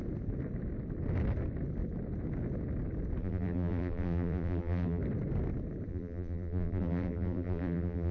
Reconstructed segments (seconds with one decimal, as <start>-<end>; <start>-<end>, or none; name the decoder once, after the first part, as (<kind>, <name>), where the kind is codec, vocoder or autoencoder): 3.2-5.0 (vocoder, BigVGAN v2); 5.9-8.1